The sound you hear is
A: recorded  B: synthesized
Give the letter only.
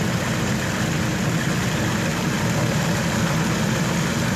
A